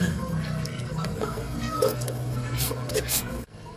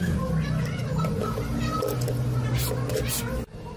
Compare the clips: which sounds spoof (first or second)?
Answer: first